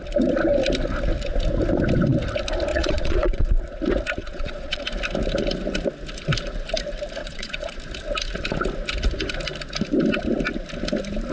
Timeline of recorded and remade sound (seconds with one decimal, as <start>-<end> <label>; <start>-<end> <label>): 0.0-2.7 recorded; 2.7-3.5 remade; 3.5-4.2 recorded; 4.2-4.8 remade; 4.8-7.2 recorded; 7.2-7.8 remade; 7.8-11.3 recorded